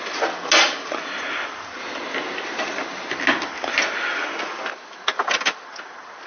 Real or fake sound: real